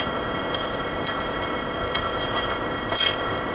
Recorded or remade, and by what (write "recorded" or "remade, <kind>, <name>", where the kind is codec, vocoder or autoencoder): remade, codec, ZipCodec